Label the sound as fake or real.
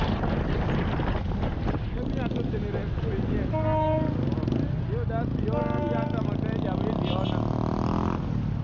real